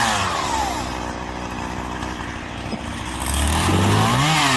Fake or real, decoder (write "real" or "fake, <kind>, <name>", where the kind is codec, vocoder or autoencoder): real